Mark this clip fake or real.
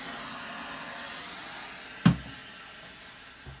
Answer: real